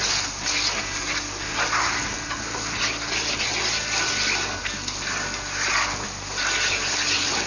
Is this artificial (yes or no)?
no